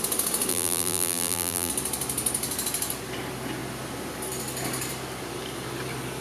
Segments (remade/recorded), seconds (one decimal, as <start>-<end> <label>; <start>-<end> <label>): 0.0-0.5 recorded; 0.5-1.7 remade; 1.7-6.2 recorded